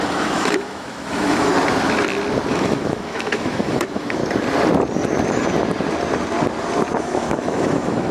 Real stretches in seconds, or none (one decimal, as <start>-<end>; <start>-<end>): 1.5-2.5; 4.2-7.0